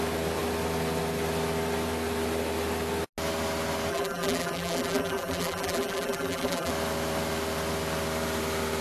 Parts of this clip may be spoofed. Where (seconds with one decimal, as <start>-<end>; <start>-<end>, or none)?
3.9-6.7